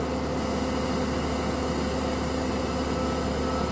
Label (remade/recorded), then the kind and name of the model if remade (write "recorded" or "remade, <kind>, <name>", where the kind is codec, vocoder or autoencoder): recorded